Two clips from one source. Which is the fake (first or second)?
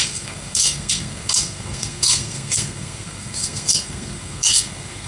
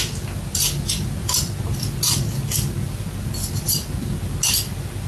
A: first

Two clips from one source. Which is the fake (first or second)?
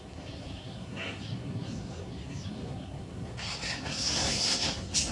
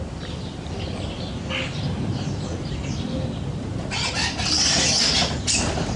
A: first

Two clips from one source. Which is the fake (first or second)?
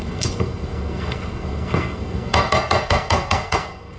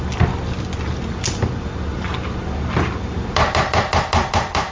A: first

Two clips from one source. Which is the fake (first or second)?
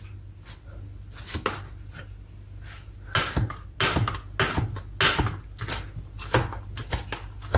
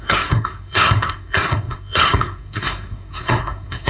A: second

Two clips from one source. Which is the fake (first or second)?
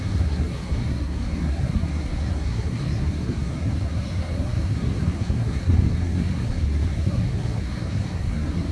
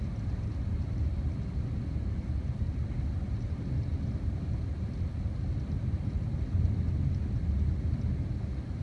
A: first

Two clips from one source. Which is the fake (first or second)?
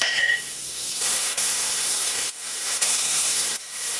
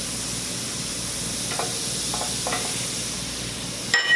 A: first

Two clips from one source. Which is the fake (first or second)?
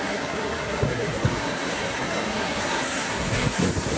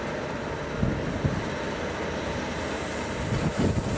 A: first